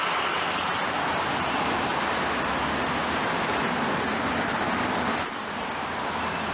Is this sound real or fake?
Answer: real